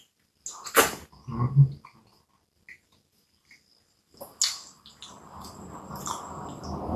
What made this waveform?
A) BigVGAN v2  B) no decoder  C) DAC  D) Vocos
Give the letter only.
B